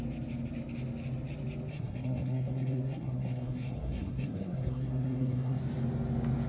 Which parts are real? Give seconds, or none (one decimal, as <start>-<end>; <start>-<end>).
0.0-1.7; 5.6-6.5